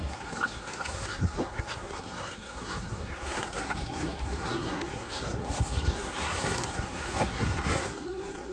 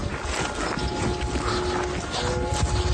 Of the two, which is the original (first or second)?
second